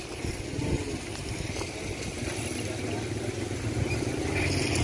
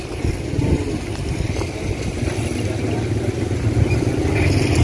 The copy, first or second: second